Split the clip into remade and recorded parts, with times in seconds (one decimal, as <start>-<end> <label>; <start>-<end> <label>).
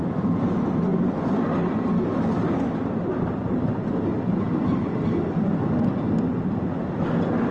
0.0-7.5 recorded